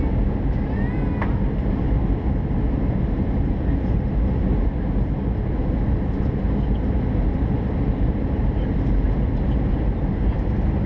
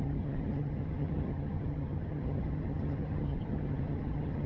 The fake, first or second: second